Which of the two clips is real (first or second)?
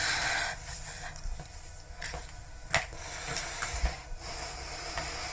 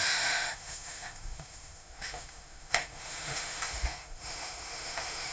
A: first